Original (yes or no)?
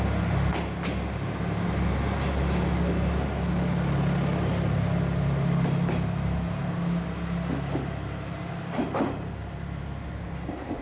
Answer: yes